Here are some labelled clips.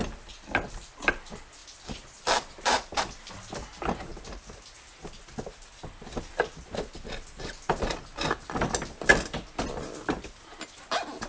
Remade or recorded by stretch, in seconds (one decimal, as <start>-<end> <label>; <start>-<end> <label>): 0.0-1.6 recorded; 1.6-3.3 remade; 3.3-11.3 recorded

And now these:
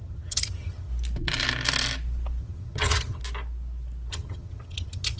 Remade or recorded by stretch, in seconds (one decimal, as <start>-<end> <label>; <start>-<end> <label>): 0.0-0.9 remade; 0.9-2.4 recorded; 2.4-3.2 remade; 3.2-4.1 recorded; 4.1-5.2 remade

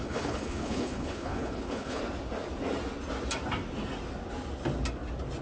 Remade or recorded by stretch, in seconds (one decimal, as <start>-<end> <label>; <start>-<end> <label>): 0.0-2.0 remade; 2.0-5.4 recorded

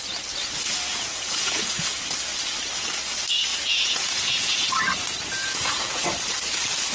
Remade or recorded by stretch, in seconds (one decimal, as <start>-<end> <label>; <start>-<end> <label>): 0.0-0.9 recorded; 0.9-2.0 remade; 2.0-3.5 recorded; 3.5-4.8 remade; 4.8-5.4 recorded; 5.4-6.0 remade; 6.0-6.9 recorded

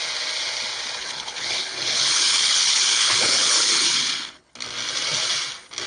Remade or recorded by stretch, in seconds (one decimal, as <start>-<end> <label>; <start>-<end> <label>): 0.0-1.0 recorded; 1.0-4.5 remade; 4.5-5.9 recorded